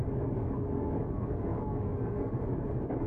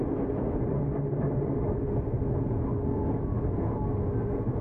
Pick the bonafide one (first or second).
second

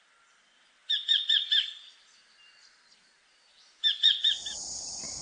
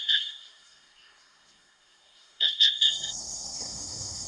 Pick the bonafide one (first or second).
first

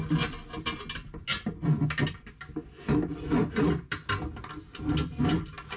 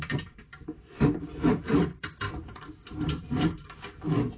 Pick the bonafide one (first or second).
first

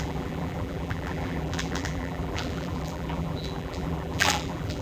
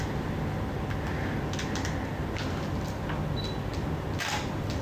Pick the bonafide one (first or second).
second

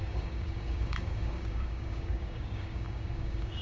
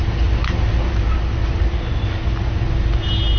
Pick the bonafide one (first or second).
second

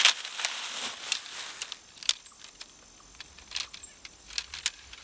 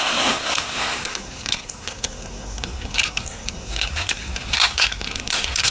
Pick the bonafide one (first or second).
first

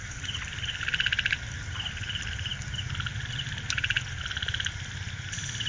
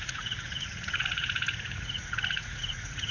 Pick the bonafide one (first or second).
first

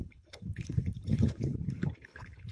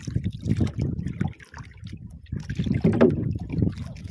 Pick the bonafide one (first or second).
second